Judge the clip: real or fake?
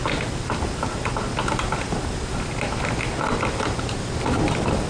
real